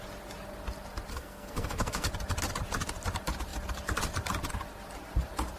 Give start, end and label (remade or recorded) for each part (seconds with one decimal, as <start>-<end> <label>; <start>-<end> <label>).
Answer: 0.0-1.1 recorded; 1.1-2.1 remade; 2.1-5.6 recorded